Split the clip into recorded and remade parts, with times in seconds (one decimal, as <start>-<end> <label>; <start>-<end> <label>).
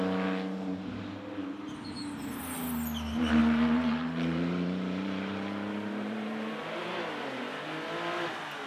0.0-3.4 recorded; 3.4-6.9 remade; 6.9-8.7 recorded